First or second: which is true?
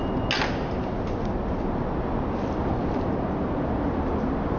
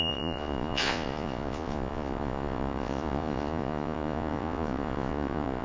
first